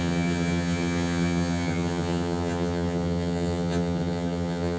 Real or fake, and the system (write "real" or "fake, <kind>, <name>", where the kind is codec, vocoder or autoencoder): fake, vocoder, HiFi-GAN